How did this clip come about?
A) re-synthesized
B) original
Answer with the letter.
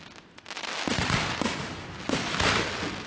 B